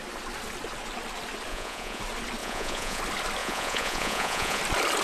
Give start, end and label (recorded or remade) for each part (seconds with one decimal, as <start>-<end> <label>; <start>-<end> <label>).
0.0-1.5 recorded; 1.5-2.0 remade; 2.0-2.4 recorded; 2.4-3.0 remade; 3.0-3.4 recorded; 3.4-4.6 remade; 4.6-5.0 recorded